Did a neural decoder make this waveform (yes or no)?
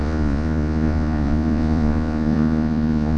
yes